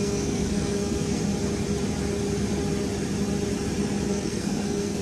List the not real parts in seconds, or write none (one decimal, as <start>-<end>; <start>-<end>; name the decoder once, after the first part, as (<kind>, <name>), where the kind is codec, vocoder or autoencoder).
0.0-1.3 (codec, SNAC); 4.1-5.0